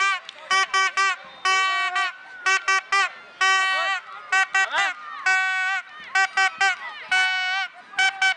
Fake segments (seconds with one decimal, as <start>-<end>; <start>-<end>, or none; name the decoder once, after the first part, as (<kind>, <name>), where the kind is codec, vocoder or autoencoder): none